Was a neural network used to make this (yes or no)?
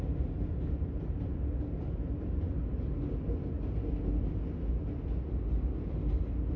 no